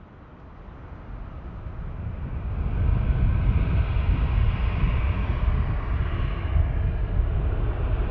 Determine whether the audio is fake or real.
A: real